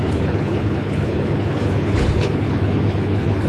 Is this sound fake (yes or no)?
yes